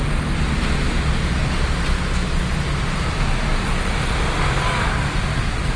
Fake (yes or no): no